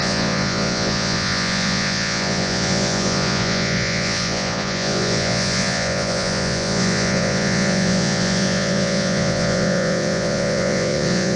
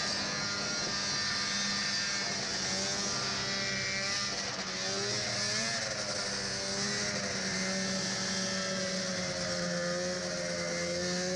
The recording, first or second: second